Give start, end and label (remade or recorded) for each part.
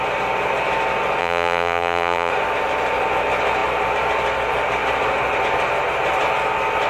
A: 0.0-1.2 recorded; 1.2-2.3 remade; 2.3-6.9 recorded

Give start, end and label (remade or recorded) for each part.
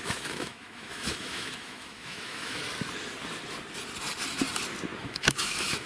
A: 0.0-2.6 remade; 2.6-5.0 recorded; 5.0-5.9 remade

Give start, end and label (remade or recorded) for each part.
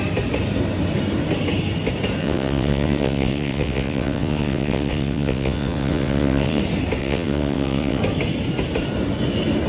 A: 0.0-2.2 recorded; 2.2-6.6 remade; 6.6-7.0 recorded; 7.0-8.0 remade; 8.0-9.7 recorded